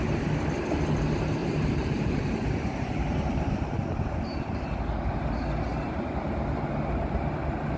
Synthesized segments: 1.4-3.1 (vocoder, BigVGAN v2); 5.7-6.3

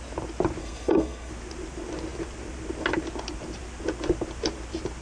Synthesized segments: 0.6-1.3 (codec, SNAC)

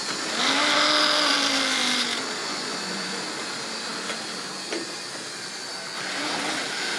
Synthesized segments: 2.4-3.1 (vocoder, Vocos)

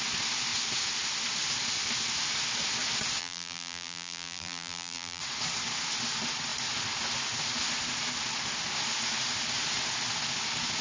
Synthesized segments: 3.2-5.2 (vocoder, BigVGAN v2)

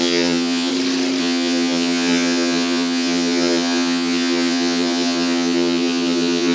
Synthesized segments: 0.0-0.7 (vocoder, HiFi-GAN); 1.2-6.5

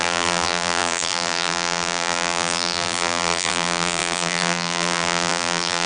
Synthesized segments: 0.0-5.9 (vocoder, BigVGAN v2)

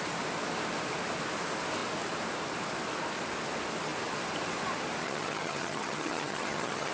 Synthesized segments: 5.0-6.9 (vocoder, HiFi-GAN)